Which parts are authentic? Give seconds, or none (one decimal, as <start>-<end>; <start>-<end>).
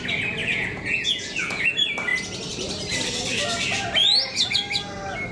0.0-0.4; 1.6-5.3